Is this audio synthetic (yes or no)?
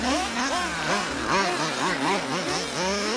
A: no